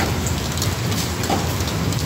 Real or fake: real